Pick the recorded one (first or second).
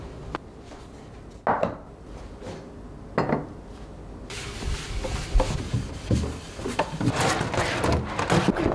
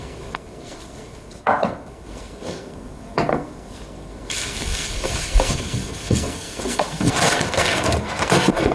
first